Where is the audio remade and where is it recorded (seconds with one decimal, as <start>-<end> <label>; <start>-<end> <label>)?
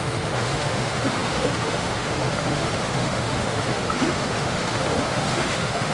0.0-5.9 remade